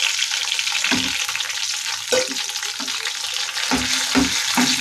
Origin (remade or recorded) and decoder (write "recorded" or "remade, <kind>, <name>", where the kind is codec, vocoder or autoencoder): recorded